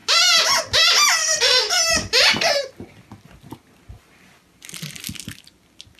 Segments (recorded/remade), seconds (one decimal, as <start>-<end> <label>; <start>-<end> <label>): 0.0-1.2 recorded; 1.2-1.8 remade; 1.8-6.0 recorded